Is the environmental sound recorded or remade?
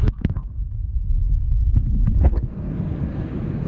remade